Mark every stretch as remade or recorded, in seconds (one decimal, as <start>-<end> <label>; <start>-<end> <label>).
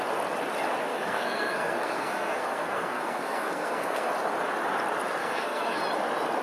0.0-0.9 recorded; 0.9-4.1 remade; 4.1-5.2 recorded; 5.2-5.8 remade; 5.8-6.4 recorded